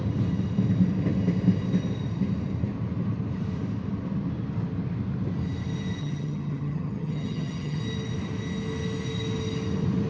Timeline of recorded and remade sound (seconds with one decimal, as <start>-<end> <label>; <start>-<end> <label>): 0.0-6.0 recorded; 6.0-7.8 remade; 7.8-10.1 recorded